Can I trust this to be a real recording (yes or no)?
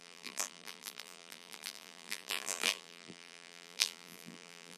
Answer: no